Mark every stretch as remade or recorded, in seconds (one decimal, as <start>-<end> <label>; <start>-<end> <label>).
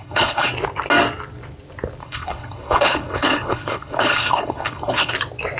0.0-0.5 remade; 0.5-2.0 recorded; 2.0-5.1 remade; 5.1-5.6 recorded